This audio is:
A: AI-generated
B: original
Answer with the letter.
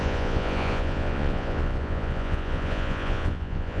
A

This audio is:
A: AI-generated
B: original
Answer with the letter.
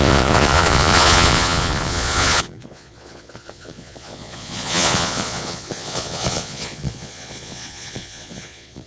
A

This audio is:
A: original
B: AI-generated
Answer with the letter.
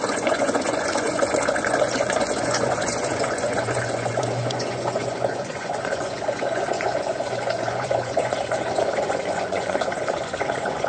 B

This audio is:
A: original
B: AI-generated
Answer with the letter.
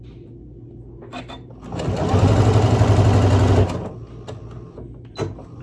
A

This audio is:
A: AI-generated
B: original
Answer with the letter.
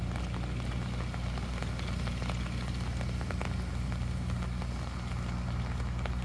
B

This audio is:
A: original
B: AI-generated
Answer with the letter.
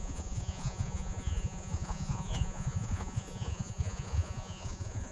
B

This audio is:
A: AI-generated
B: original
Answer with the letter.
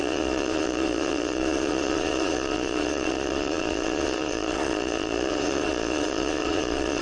A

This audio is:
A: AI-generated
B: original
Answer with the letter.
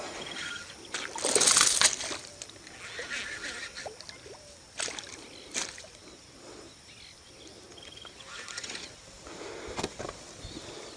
B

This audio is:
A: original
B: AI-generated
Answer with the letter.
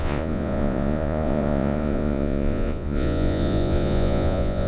B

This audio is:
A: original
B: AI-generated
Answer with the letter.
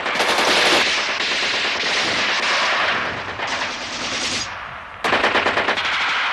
A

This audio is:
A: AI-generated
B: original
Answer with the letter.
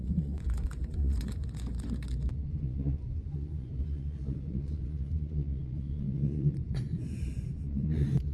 A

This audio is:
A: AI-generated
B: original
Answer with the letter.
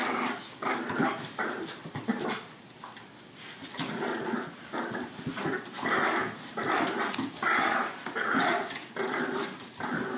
B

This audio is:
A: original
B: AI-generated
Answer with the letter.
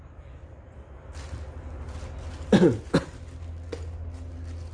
A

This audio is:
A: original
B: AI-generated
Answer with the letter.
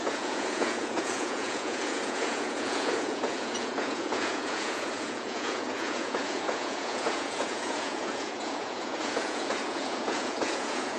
B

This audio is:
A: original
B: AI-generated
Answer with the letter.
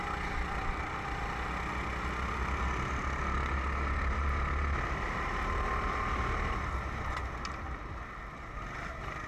A